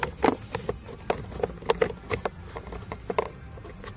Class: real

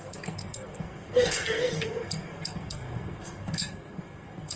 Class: fake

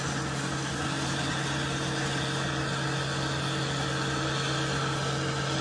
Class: real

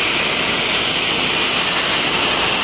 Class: real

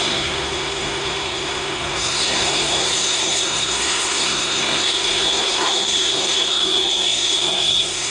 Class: fake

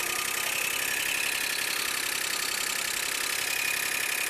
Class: real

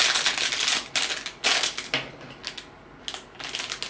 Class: real